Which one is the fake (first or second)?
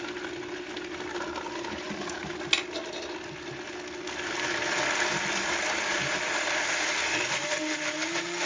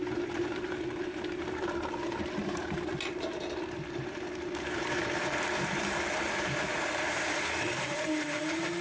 second